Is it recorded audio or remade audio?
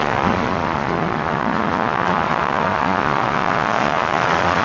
remade